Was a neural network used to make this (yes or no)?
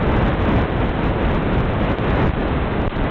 no